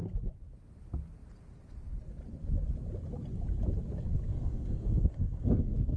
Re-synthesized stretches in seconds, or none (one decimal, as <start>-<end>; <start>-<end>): 4.3-6.0